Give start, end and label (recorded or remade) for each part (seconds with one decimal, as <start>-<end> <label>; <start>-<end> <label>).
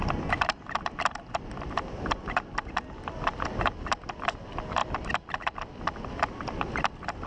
0.0-7.3 recorded